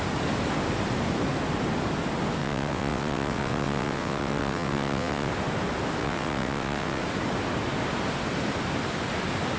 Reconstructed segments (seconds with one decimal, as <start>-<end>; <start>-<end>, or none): 2.4-5.3; 6.0-7.0